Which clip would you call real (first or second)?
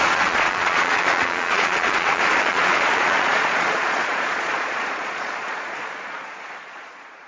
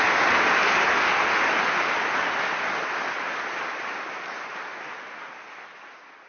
second